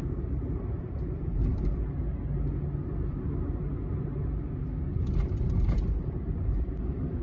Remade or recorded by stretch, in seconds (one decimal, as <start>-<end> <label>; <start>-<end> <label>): 0.0-7.2 recorded